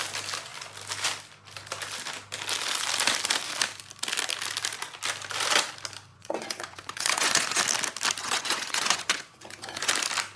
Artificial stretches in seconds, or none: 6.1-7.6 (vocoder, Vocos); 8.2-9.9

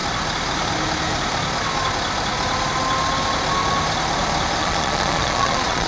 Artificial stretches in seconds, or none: 4.6-5.9 (vocoder, Vocos)

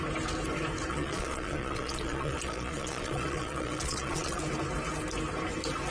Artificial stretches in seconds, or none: 0.9-4.4 (vocoder, Vocos)

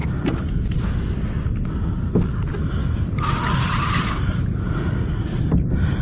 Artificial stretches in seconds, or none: none